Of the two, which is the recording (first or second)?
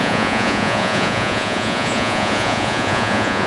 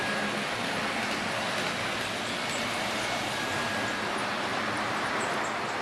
second